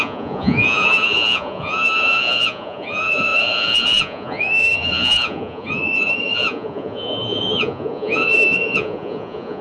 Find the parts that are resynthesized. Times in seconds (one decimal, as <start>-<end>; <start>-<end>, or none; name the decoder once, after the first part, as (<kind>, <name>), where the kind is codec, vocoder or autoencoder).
0.0-9.6 (vocoder, Vocos)